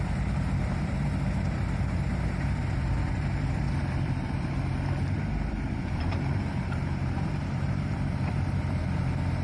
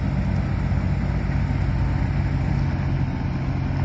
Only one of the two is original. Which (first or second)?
second